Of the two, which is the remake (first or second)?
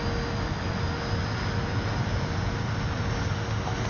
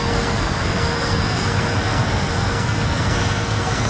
second